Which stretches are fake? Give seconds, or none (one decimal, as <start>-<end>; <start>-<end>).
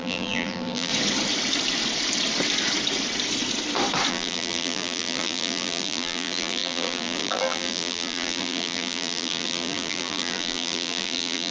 0.0-0.9; 4.1-11.5